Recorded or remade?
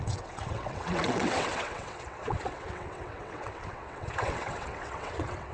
remade